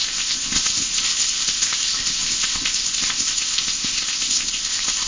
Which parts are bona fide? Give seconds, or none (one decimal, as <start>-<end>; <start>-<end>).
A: none